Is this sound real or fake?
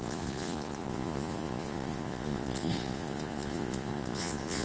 fake